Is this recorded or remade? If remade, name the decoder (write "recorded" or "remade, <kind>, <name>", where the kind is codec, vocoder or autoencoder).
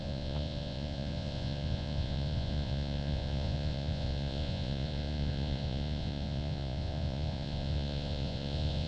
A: remade, vocoder, Vocos